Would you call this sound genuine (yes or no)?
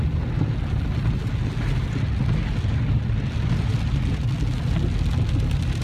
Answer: yes